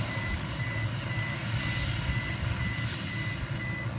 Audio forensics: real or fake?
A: real